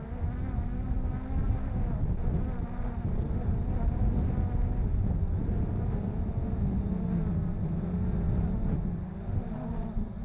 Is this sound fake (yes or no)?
no